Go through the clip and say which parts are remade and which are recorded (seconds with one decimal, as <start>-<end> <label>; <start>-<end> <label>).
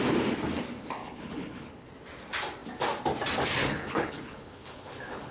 0.0-1.0 recorded; 1.0-1.9 remade; 1.9-3.6 recorded; 3.6-5.3 remade